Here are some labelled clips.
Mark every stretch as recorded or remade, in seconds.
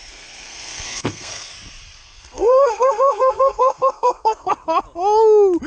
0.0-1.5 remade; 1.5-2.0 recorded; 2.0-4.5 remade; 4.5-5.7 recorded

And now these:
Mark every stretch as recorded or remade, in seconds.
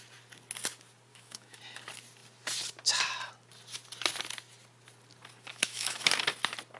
0.0-1.1 recorded; 1.1-1.6 remade; 1.6-5.5 recorded; 5.5-6.1 remade; 6.1-6.8 recorded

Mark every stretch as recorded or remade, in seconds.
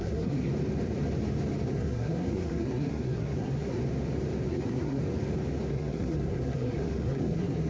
0.0-0.5 remade; 0.5-1.7 recorded; 1.7-3.8 remade; 3.8-4.5 recorded; 4.5-5.0 remade; 5.0-5.7 recorded; 5.7-7.7 remade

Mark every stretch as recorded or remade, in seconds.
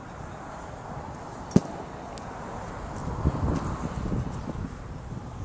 0.0-0.8 recorded; 0.8-3.0 remade; 3.0-4.9 recorded; 4.9-5.4 remade